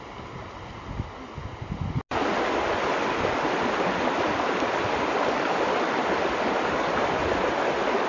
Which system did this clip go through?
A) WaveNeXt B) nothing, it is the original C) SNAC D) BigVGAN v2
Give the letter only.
B